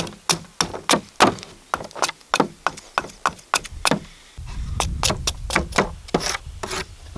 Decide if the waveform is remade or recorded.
recorded